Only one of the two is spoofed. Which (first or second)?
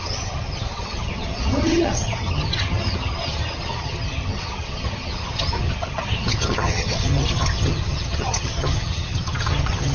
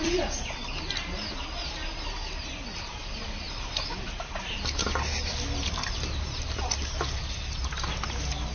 first